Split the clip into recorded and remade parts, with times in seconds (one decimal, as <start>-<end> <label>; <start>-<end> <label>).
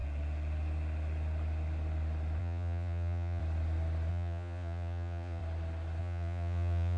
0.0-2.4 recorded; 2.4-3.4 remade; 3.4-4.1 recorded; 4.1-5.4 remade; 5.4-6.0 recorded; 6.0-7.0 remade